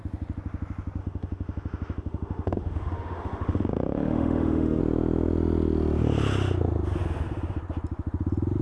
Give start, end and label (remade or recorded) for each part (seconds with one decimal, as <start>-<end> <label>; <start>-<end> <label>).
0.0-1.0 recorded; 1.0-4.8 remade; 4.8-8.6 recorded